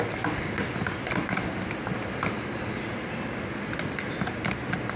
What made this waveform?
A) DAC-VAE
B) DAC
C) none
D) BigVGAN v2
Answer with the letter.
C